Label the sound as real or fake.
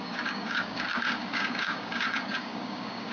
fake